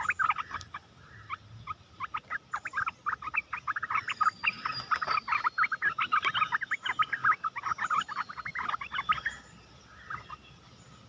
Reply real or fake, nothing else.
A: real